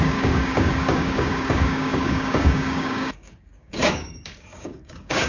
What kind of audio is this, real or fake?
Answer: fake